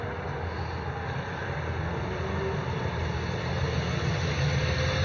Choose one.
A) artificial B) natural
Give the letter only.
B